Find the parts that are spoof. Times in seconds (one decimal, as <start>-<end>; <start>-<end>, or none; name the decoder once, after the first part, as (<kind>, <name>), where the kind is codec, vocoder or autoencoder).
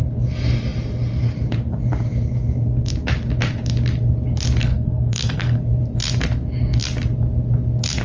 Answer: 4.6-5.6 (codec, SNAC)